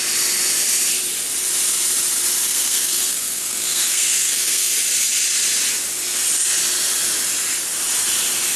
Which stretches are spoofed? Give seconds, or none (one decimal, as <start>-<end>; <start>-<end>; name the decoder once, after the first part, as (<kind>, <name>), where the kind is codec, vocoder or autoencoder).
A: 2.5-4.7 (codec, SNAC)